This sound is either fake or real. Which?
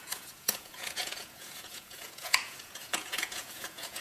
fake